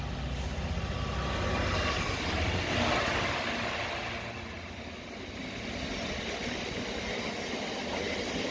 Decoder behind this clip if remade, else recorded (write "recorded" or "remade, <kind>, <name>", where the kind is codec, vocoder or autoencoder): recorded